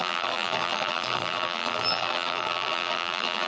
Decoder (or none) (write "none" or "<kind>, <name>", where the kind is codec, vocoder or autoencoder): vocoder, BigVGAN v2